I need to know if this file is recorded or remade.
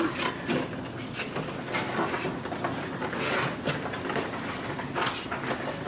recorded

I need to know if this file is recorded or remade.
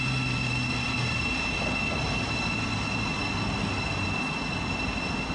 recorded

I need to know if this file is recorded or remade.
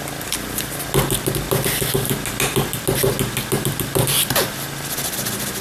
recorded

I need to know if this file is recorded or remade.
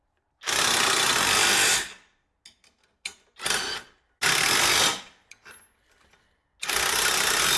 recorded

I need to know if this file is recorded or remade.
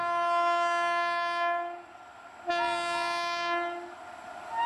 recorded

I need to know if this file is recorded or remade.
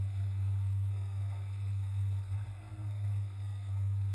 remade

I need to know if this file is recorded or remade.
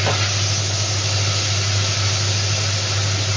recorded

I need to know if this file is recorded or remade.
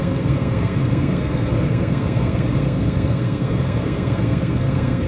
remade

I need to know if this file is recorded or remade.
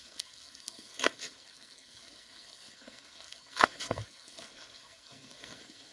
remade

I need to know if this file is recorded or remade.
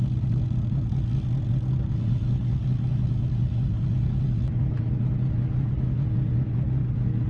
recorded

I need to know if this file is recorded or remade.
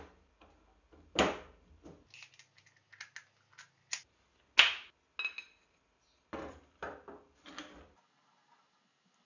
recorded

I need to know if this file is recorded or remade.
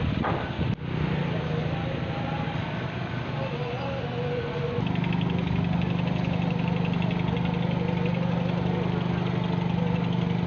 recorded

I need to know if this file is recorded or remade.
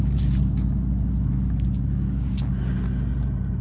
recorded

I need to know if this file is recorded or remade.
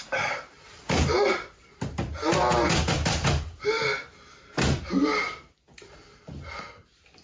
recorded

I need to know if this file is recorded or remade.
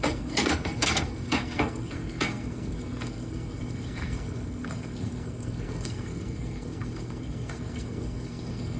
remade